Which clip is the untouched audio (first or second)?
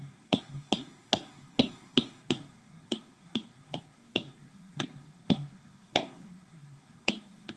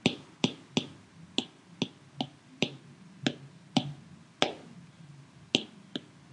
second